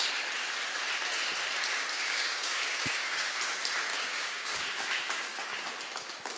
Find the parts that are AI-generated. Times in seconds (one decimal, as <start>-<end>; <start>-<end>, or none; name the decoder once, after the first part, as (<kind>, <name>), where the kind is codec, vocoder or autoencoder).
1.9-3.4 (codec, DAC); 3.9-5.6